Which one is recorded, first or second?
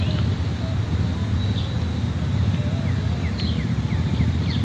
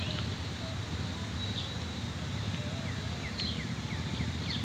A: first